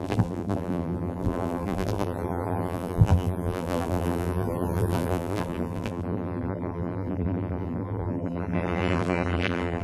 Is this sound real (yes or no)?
no